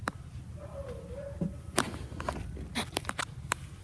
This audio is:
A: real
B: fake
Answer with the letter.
A